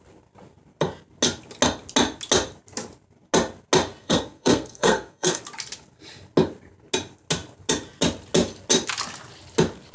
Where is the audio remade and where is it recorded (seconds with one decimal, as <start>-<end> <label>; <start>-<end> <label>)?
0.0-4.0 recorded; 4.0-5.4 remade; 5.4-9.9 recorded